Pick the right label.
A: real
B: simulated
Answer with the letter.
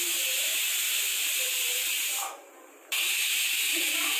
B